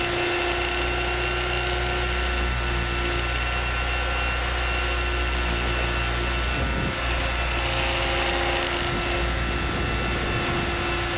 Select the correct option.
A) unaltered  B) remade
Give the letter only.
A